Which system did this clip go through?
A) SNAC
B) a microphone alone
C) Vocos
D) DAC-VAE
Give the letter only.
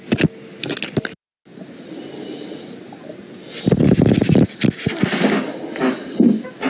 B